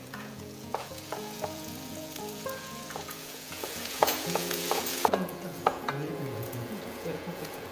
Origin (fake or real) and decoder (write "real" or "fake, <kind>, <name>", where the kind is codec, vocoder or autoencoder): fake, vocoder, Vocos